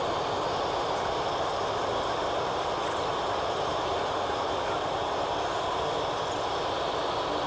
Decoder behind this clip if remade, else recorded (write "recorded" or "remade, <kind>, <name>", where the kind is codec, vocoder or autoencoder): recorded